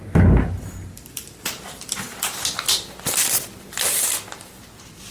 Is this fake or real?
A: fake